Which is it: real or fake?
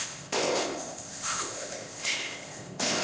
fake